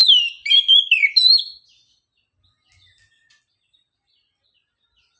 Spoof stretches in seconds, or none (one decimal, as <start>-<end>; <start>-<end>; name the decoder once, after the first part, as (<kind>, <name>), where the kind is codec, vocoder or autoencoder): 0.0-1.3 (vocoder, BigVGAN v2)